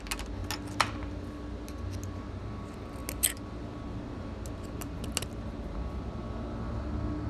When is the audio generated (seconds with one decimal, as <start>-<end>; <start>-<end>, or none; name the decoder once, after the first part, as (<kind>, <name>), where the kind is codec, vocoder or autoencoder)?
none

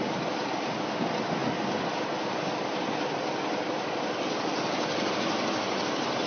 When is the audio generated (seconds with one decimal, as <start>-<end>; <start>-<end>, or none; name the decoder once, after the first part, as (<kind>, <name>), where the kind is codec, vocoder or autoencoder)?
none

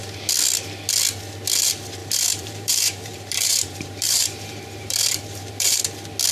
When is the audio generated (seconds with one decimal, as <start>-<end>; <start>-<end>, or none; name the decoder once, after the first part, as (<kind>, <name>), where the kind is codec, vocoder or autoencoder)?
2.0-5.8 (vocoder, BigVGAN v2)

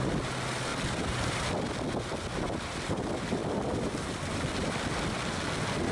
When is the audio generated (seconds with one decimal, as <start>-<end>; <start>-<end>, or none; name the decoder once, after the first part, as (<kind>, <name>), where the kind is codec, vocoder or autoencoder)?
0.7-1.6 (vocoder, BigVGAN v2); 3.4-4.0